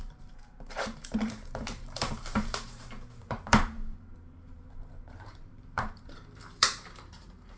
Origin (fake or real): fake